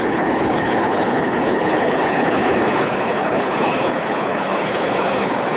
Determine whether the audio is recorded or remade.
remade